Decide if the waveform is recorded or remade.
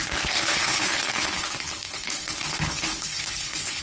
remade